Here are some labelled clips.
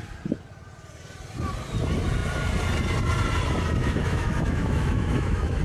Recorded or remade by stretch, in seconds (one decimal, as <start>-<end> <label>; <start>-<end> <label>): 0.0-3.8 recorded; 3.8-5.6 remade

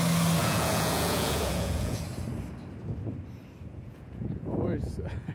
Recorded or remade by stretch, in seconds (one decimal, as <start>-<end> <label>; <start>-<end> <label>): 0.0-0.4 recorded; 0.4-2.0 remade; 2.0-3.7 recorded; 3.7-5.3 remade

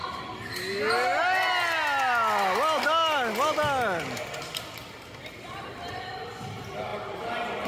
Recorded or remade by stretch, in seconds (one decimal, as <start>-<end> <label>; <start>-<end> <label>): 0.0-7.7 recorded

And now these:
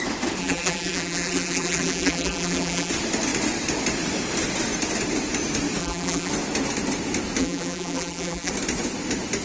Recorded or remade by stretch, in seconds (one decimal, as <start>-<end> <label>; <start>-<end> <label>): 0.0-0.4 recorded; 0.4-2.9 remade; 2.9-5.8 recorded; 5.8-6.3 remade; 6.3-7.4 recorded; 7.4-8.5 remade; 8.5-9.4 recorded

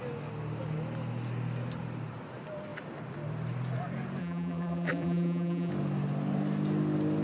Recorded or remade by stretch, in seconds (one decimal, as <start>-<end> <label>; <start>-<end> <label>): 0.0-4.2 recorded; 4.2-5.7 remade; 5.7-7.2 recorded

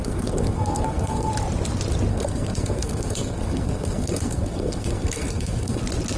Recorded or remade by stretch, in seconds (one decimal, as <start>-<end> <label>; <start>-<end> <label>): 0.0-1.3 remade; 1.3-2.1 recorded; 2.1-5.8 remade; 5.8-6.2 recorded

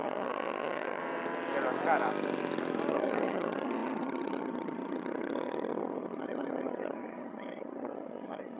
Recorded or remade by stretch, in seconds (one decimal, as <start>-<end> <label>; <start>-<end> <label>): 0.0-1.0 remade; 1.0-2.9 recorded; 2.9-8.6 remade